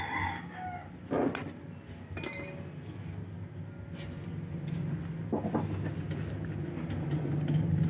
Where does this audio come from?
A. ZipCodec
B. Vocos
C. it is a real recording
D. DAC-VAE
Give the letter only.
C